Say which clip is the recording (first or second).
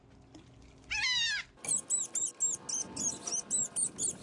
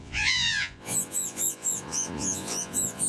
first